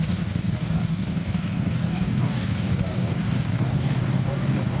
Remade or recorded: remade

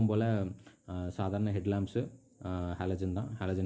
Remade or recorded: recorded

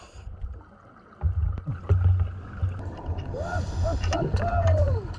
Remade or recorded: recorded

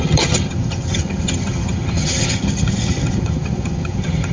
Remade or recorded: remade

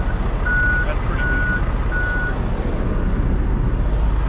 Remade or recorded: recorded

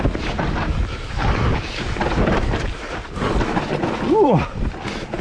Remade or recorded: recorded